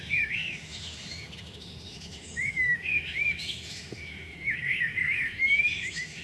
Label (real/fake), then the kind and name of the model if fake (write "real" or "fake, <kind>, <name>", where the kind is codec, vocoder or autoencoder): fake, autoencoder, DAC-VAE